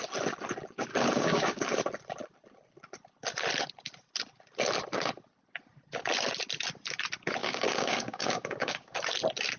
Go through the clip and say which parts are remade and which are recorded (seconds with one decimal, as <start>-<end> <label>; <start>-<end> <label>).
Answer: 0.0-0.9 recorded; 0.9-1.8 remade; 1.8-7.4 recorded; 7.4-9.0 remade; 9.0-9.6 recorded